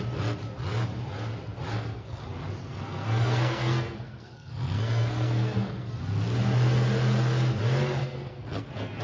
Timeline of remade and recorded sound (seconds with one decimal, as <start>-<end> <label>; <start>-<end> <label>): 0.0-1.7 recorded; 1.7-2.2 remade; 2.2-2.6 recorded; 2.6-5.9 remade; 5.9-8.0 recorded; 8.0-9.0 remade